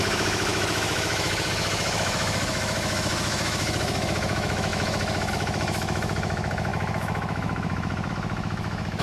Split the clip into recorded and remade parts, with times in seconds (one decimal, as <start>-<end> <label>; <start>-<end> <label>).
0.0-9.0 remade